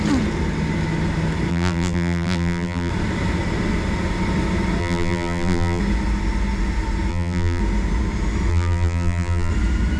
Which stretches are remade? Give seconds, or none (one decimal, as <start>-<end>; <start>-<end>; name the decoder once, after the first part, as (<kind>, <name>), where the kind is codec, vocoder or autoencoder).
1.5-2.9 (vocoder, BigVGAN v2); 4.8-5.8; 7.1-7.6; 8.5-9.5